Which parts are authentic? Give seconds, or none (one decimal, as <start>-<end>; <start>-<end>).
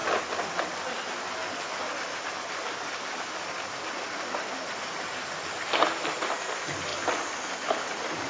0.0-8.3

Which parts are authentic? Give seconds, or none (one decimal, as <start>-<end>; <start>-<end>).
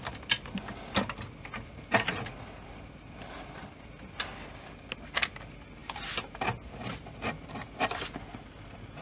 0.0-9.0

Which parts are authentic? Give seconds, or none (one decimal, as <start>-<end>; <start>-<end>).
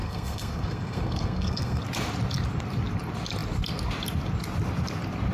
1.8-5.3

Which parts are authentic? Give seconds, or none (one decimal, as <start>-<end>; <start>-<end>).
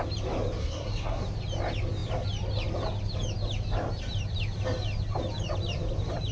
0.0-0.6; 1.2-6.3